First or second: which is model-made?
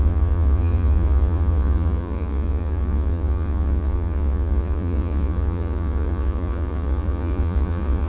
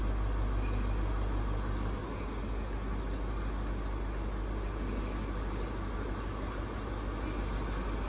first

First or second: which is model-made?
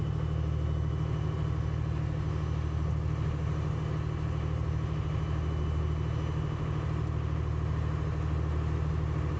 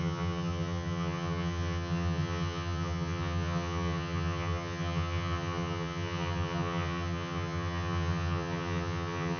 second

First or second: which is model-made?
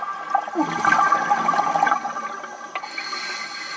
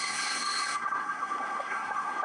second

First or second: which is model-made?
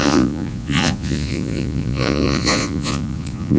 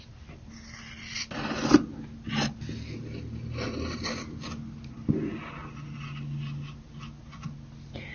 first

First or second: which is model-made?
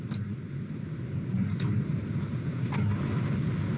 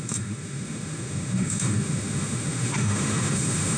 second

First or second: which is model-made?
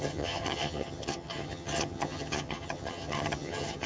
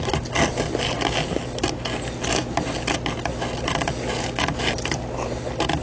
first